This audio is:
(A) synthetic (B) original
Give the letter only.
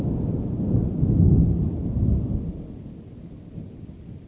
B